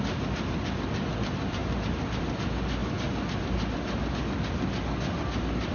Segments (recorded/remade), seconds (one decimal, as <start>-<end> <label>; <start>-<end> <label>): 0.0-5.7 recorded